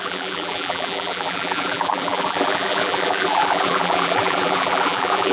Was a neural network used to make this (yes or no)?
yes